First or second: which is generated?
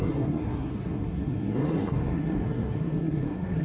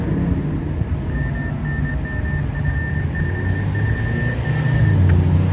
first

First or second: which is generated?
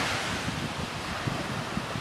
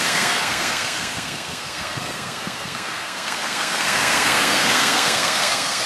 second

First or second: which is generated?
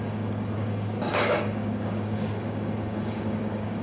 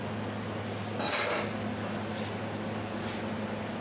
first